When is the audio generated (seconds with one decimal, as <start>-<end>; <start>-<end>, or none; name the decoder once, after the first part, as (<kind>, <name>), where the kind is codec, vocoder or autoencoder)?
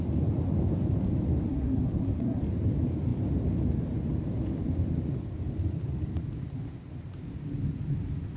1.5-2.4 (codec, SNAC)